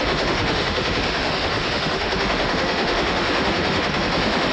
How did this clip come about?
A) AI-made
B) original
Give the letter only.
A